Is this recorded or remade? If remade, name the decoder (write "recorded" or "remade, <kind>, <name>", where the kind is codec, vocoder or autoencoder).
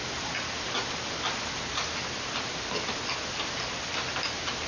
recorded